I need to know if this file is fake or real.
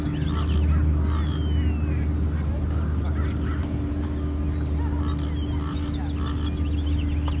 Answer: real